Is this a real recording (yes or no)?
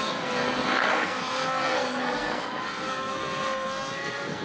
no